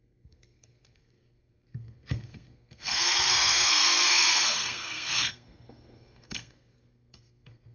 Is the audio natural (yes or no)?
no